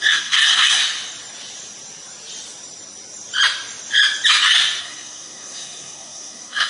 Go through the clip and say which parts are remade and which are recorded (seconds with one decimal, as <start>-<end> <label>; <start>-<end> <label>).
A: 0.0-0.8 remade; 0.8-4.8 recorded; 4.8-6.7 remade